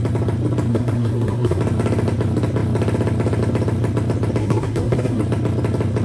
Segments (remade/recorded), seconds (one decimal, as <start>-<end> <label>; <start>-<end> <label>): 0.0-0.7 recorded; 0.7-1.6 remade; 1.6-4.4 recorded; 4.4-5.2 remade; 5.2-6.0 recorded